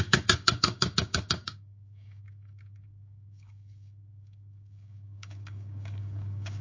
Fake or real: fake